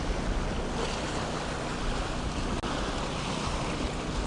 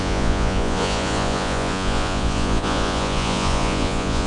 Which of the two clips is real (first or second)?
first